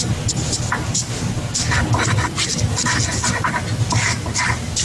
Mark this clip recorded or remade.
recorded